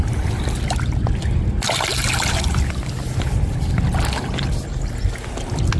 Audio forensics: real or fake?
real